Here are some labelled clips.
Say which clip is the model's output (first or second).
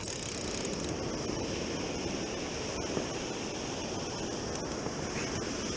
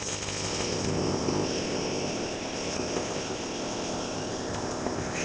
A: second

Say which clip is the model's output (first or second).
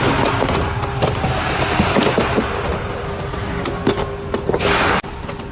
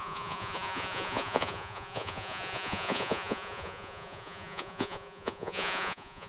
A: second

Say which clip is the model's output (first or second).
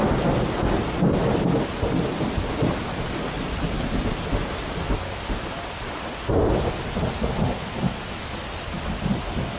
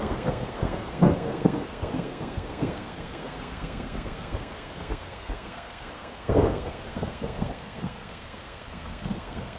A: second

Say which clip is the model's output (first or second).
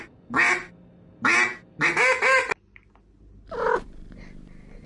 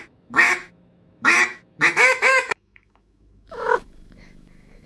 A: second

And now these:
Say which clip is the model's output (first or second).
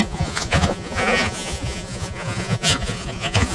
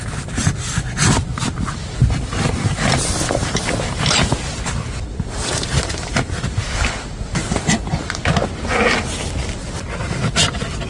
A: first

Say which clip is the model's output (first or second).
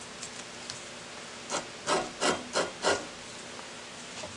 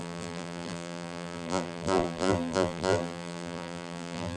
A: second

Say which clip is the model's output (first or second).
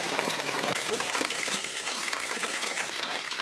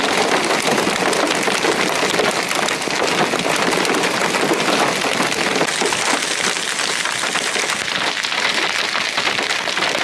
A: first